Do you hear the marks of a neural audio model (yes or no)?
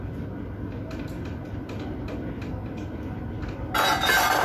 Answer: no